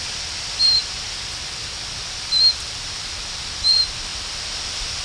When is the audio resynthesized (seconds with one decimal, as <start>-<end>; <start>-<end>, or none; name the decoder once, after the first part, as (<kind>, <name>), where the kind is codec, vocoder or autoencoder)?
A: none